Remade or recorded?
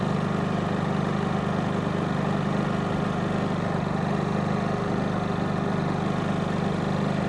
recorded